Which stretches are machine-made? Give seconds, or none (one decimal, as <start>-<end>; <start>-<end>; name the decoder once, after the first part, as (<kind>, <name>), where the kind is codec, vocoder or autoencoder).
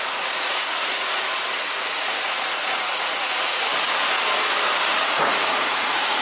0.0-3.7 (vocoder, Vocos); 4.9-6.2